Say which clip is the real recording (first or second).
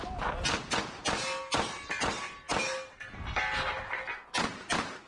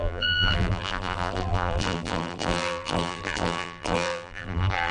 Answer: first